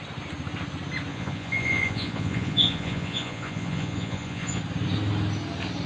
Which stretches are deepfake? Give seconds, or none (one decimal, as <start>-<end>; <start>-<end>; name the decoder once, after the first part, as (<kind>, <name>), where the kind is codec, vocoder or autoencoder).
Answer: 1.1-4.6 (vocoder, Vocos)